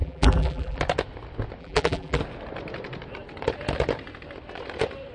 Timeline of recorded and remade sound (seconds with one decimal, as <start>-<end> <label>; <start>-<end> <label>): 0.0-0.8 remade; 0.8-1.6 recorded; 1.6-2.2 remade; 2.2-5.1 recorded